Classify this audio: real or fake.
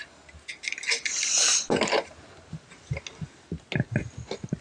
real